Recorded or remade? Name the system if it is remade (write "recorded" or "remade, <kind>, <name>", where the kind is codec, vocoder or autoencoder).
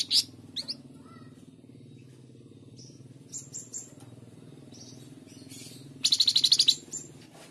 recorded